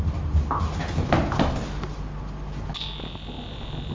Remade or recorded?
recorded